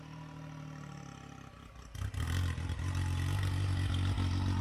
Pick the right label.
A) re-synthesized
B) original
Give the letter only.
B